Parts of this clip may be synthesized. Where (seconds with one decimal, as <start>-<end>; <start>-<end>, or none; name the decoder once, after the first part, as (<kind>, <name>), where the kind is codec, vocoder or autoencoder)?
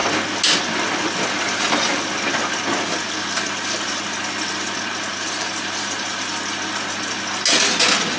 5.1-6.4 (vocoder, BigVGAN v2)